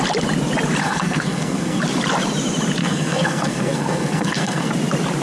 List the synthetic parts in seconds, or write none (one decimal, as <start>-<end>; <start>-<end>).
0.8-1.8; 2.8-4.7

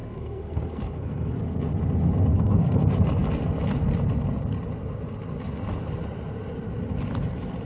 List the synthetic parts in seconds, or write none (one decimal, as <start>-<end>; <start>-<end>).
0.0-1.3; 2.3-2.8

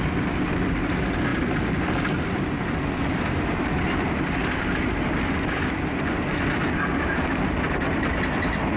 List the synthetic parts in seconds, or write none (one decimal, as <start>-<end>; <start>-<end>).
none

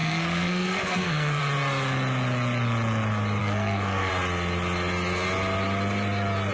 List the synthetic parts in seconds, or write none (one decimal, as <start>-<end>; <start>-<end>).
0.0-1.4; 3.4-4.1